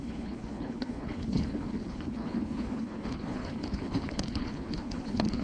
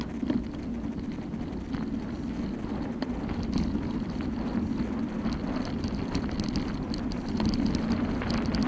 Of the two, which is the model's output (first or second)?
first